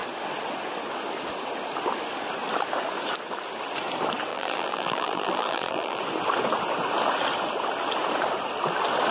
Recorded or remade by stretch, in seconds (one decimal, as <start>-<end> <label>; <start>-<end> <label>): 0.0-4.3 recorded; 4.3-6.0 remade; 6.0-9.1 recorded